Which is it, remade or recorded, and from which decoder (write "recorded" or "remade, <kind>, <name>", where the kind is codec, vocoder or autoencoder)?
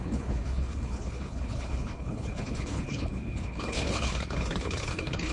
remade, codec, HILCodec